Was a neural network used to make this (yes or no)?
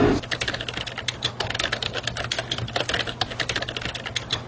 no